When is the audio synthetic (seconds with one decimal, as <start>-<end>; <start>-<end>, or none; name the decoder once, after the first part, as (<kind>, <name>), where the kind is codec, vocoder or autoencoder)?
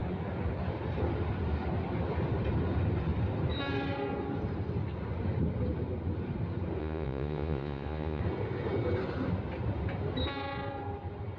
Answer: 6.8-8.2 (vocoder, Vocos)